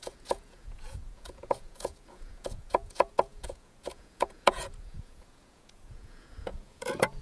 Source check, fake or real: fake